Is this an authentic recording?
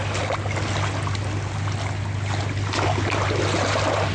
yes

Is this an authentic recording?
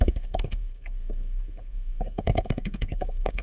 no